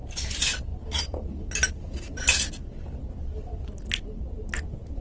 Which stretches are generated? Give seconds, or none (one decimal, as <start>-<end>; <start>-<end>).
none